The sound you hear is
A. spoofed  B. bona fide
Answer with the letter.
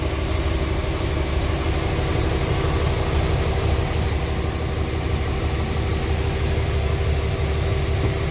B